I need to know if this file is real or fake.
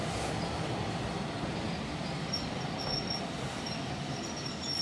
real